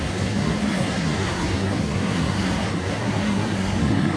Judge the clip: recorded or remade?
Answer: remade